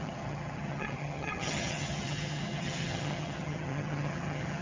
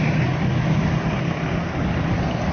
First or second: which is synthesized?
first